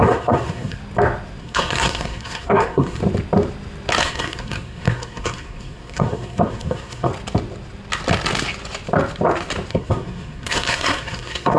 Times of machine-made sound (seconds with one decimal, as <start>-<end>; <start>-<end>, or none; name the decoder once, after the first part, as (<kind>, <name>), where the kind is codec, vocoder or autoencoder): 0.0-0.8 (codec, SNAC); 1.4-3.0; 4.0-7.1; 9.7-11.6